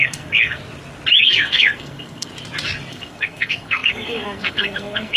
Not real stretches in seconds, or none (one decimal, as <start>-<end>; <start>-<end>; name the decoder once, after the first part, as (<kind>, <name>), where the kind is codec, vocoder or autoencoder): 0.0-0.6 (codec, SNAC); 1.2-2.3; 2.9-5.2

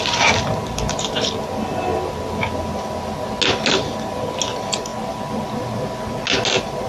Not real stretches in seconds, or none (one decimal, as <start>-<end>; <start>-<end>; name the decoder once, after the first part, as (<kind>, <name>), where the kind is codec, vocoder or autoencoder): none

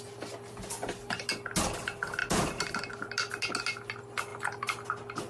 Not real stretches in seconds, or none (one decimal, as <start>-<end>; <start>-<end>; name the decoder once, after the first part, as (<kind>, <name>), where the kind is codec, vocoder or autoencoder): none